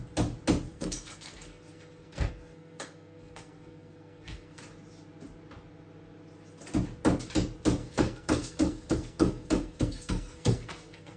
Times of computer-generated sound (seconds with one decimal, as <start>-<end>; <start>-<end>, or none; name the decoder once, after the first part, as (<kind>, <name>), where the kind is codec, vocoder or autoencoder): 0.7-4.6 (codec, SNAC); 7.8-11.2

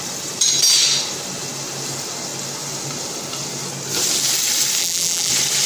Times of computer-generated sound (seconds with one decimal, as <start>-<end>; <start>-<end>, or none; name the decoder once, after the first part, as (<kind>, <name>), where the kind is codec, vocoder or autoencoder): 4.8-5.3 (vocoder, BigVGAN v2)

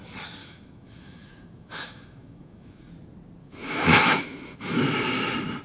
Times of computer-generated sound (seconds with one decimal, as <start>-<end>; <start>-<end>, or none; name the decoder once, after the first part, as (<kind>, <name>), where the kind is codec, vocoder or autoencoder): 0.4-2.9 (autoencoder, DAC-VAE); 3.4-4.8